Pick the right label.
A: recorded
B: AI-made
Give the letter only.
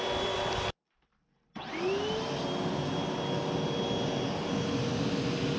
A